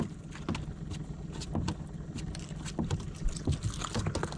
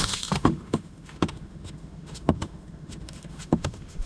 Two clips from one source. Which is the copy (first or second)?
second